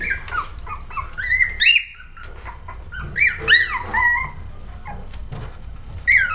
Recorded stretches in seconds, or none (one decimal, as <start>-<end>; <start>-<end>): 0.0-6.3